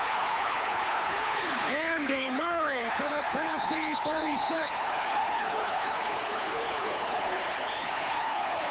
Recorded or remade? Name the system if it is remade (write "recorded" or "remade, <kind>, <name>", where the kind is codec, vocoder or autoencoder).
remade, codec, HILCodec